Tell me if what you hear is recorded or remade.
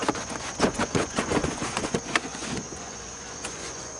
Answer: remade